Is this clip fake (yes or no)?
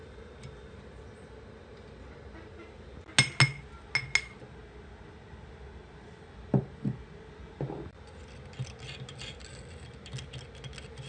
no